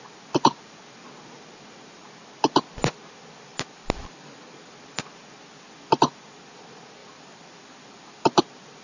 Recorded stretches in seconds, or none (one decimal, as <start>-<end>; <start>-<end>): 0.0-3.5; 4.4-7.0; 8.4-8.8